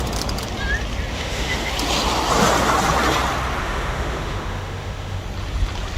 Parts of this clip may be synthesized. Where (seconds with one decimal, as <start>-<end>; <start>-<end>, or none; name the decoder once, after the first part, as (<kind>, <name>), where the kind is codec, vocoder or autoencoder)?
1.1-1.7 (autoencoder, DAC-VAE); 3.6-5.2